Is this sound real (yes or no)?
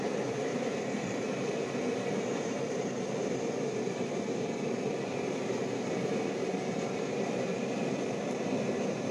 no